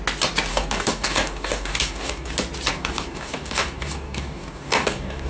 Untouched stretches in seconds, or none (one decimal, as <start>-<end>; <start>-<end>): 0.0-0.5; 2.3-2.7